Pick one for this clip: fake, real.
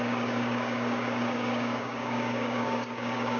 fake